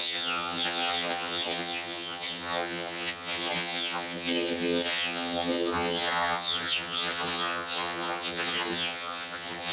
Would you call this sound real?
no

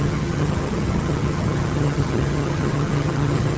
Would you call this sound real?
no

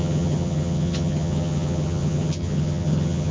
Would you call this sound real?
no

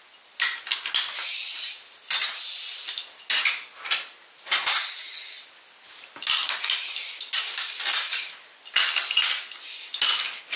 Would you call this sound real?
yes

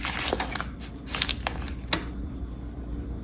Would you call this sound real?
yes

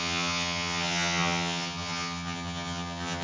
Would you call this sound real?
no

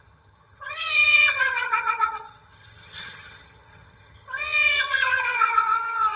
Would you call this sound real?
no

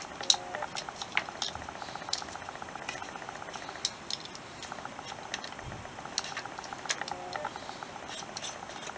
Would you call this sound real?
yes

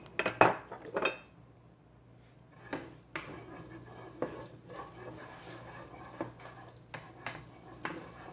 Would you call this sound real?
yes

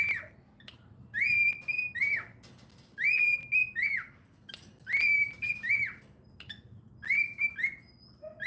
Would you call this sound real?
yes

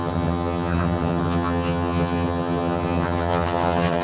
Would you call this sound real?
no